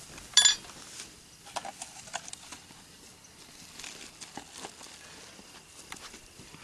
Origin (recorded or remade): recorded